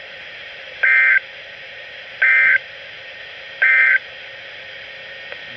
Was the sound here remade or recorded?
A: remade